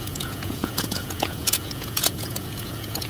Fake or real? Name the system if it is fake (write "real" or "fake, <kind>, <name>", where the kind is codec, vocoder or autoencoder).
fake, vocoder, Vocos